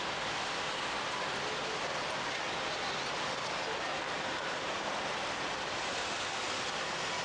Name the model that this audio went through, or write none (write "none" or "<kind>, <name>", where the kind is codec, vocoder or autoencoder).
none